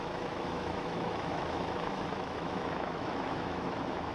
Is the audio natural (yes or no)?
no